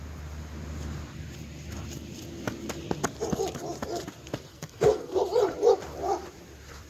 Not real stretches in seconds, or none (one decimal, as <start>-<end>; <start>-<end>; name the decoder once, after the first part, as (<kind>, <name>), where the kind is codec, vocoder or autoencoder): 4.5-5.2 (codec, SNAC)